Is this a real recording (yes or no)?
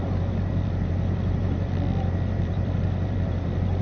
no